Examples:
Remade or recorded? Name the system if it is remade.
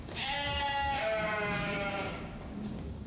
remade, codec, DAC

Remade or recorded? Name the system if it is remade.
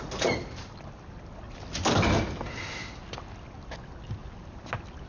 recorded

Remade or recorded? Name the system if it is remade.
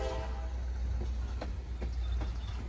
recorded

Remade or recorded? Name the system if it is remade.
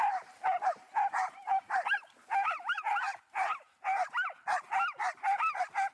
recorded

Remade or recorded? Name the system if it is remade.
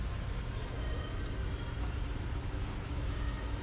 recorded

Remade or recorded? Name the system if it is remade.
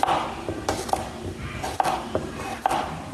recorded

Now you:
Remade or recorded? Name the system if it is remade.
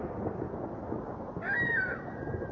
recorded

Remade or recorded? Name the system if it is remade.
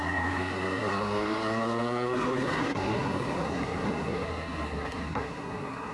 remade, codec, SNAC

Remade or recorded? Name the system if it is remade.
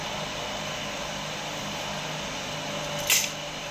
recorded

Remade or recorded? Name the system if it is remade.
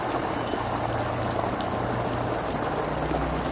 recorded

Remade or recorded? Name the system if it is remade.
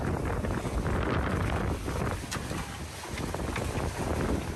recorded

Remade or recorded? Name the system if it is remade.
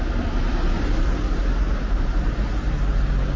recorded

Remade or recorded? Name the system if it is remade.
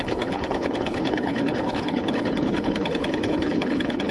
remade, codec, HILCodec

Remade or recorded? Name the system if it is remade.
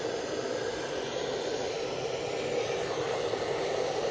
recorded